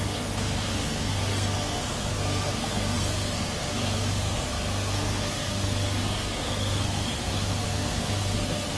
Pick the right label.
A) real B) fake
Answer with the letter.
B